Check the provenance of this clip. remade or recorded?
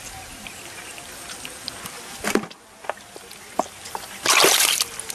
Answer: recorded